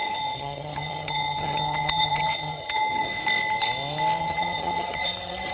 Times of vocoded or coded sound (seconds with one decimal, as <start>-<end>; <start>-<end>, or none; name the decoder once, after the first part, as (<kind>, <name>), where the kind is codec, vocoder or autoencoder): 0.0-3.2 (vocoder, HiFi-GAN); 4.2-5.5